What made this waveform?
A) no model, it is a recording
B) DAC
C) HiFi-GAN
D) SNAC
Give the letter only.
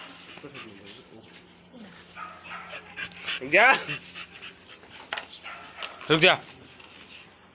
A